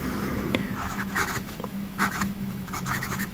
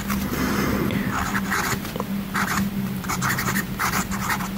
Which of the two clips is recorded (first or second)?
second